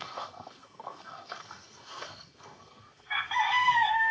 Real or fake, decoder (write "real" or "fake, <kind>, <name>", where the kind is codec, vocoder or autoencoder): fake, codec, SNAC